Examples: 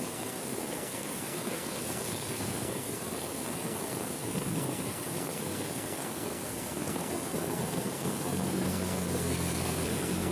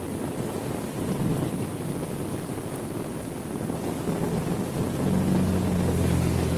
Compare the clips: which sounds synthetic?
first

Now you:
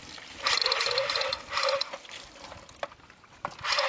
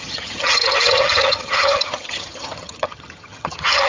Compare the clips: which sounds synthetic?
second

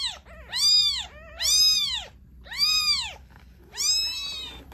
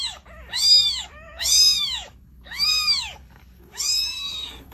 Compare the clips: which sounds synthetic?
second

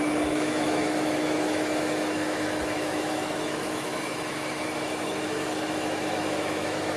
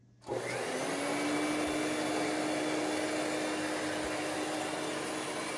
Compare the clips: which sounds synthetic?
first